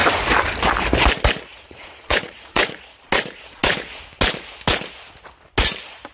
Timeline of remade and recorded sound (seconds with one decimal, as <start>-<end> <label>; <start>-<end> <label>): 0.0-1.5 recorded; 1.5-2.8 remade; 2.8-6.1 recorded